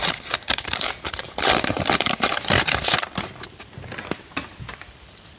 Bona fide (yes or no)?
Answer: no